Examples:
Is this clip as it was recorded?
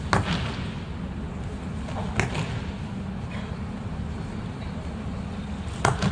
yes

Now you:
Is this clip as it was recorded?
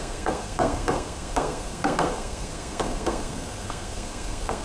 no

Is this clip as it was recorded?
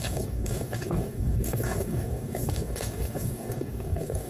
no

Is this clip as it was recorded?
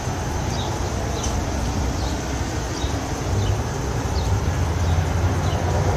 no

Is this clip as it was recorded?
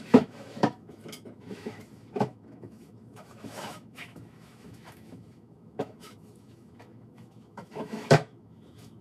no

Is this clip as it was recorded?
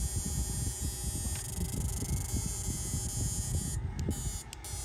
yes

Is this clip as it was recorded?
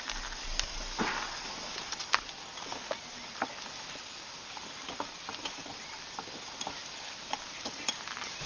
yes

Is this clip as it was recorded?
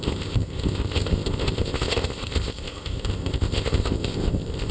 no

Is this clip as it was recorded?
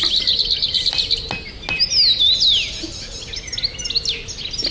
yes